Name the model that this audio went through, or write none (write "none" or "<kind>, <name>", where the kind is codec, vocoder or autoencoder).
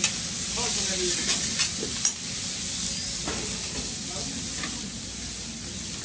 none